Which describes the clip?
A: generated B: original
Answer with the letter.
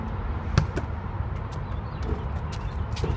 B